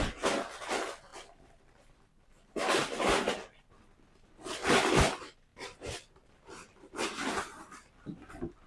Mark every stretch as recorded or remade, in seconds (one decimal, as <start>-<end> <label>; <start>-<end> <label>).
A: 0.0-5.5 recorded; 5.5-7.9 remade; 7.9-8.7 recorded